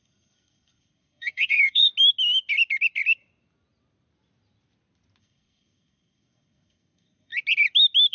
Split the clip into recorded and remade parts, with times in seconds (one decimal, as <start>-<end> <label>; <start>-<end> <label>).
0.0-1.9 remade; 1.9-5.2 recorded; 5.2-7.3 remade; 7.3-8.1 recorded